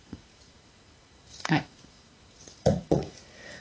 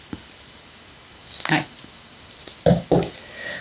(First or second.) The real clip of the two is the second